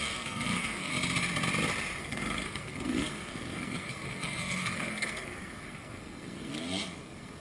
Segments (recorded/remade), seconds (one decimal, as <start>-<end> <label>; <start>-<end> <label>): 0.0-0.9 remade; 0.9-2.0 recorded; 2.0-7.4 remade